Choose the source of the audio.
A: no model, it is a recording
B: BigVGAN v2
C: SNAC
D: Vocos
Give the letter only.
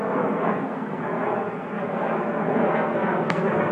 C